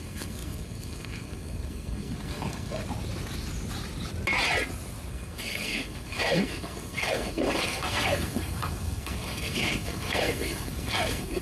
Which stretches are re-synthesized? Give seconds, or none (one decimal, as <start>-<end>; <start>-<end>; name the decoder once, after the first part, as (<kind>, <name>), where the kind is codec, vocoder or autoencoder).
0.0-2.8 (codec, SNAC); 5.1-11.4